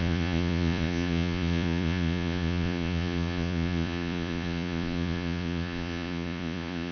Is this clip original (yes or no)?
no